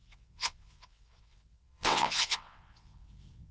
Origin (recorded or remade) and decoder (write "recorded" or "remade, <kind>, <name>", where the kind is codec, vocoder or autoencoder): remade, vocoder, WaveNeXt